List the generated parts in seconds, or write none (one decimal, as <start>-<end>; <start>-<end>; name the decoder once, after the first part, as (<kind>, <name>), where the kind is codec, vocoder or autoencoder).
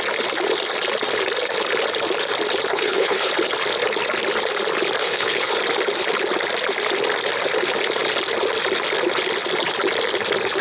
2.7-3.3 (codec, HILCodec); 5.0-5.6